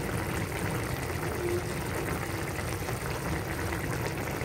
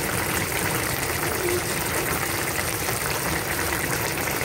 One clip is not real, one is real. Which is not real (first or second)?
second